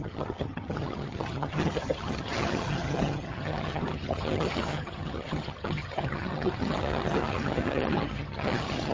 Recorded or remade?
remade